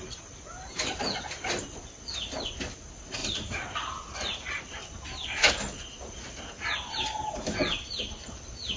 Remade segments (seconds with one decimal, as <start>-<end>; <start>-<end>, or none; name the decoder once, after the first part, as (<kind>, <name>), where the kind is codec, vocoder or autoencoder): none